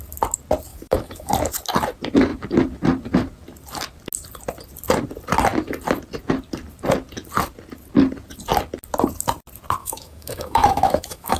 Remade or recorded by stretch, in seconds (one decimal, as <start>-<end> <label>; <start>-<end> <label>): 0.0-0.7 recorded; 0.7-1.3 remade; 1.3-9.8 recorded; 9.8-11.4 remade